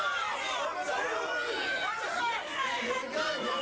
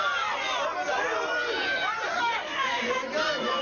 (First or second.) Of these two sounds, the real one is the second